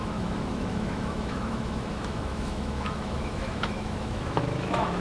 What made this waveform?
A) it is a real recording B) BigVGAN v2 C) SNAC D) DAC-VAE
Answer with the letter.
D